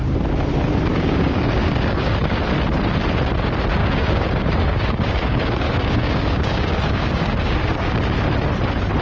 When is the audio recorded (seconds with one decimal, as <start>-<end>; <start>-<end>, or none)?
0.0-0.9; 2.4-3.8; 8.0-9.0